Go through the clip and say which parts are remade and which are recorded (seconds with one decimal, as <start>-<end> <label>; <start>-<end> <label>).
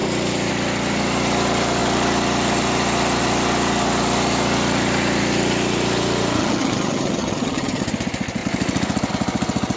0.0-6.4 recorded; 6.4-7.8 remade; 7.8-9.8 recorded